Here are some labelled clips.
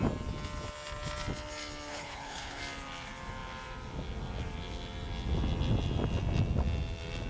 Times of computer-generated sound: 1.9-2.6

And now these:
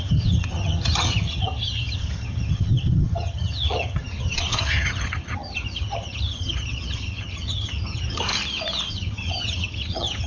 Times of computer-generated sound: 0.0-8.3; 8.9-10.3

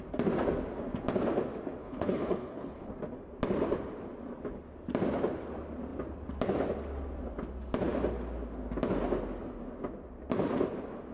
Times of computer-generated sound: 1.8-2.9

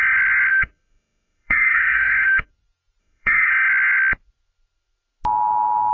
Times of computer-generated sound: 0.5-2.5; 3.0-3.5